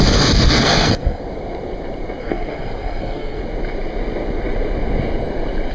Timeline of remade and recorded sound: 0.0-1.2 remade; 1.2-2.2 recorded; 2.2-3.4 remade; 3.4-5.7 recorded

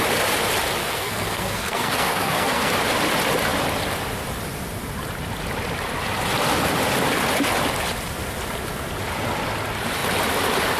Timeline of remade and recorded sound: 0.0-0.8 recorded; 0.8-2.7 remade; 2.7-10.8 recorded

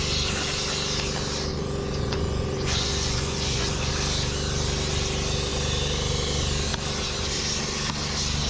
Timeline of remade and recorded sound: 0.0-1.5 recorded; 1.5-3.9 remade; 3.9-8.5 recorded

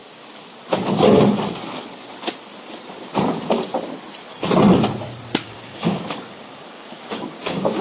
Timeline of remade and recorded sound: 0.0-5.4 recorded; 5.4-7.8 remade

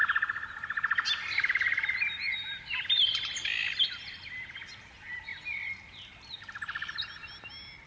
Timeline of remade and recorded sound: 0.0-4.4 remade; 4.4-7.9 recorded